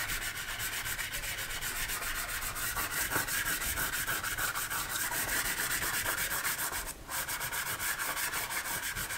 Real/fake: fake